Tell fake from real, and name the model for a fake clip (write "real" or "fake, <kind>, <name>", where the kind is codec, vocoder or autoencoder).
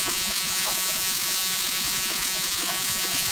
fake, vocoder, Vocos